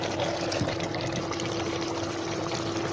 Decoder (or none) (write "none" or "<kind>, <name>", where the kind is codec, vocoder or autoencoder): vocoder, BigVGAN v2